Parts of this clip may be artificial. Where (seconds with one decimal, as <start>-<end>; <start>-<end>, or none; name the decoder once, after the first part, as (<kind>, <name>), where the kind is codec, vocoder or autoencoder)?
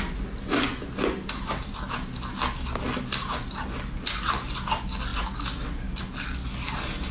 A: none